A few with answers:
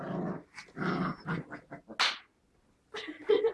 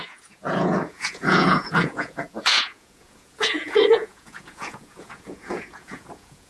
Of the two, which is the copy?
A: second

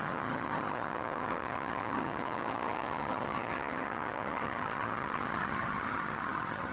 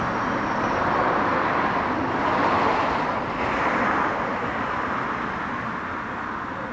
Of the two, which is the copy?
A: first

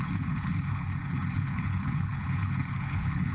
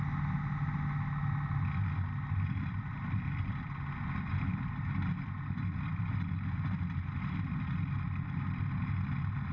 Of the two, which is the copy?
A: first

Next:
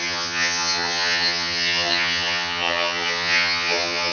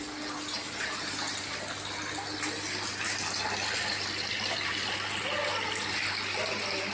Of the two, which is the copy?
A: first